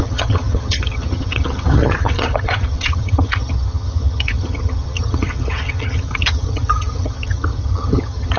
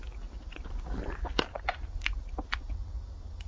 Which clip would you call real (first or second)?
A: second